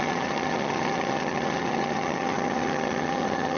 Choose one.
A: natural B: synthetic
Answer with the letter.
B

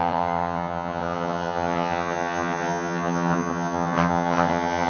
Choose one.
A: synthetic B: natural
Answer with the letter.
A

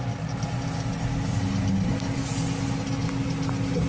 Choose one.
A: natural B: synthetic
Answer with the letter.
A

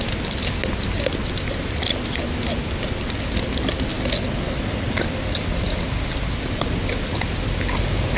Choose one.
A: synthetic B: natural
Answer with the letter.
B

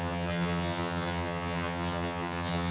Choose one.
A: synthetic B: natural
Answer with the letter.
A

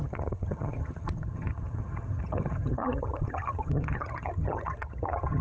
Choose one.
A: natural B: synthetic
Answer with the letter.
B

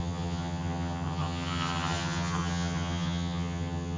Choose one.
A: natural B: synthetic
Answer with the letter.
B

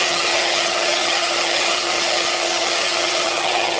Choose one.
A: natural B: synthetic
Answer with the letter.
B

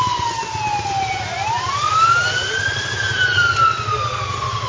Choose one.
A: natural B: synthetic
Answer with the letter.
A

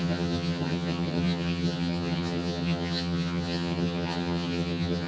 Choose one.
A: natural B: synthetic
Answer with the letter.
B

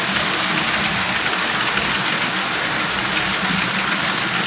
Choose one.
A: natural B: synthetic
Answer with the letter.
A